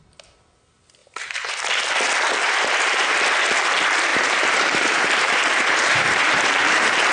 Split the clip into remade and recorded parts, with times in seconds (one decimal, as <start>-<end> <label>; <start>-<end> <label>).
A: 0.0-1.0 recorded; 1.0-1.5 remade; 1.5-2.4 recorded; 2.4-3.1 remade; 3.1-4.1 recorded; 4.1-7.1 remade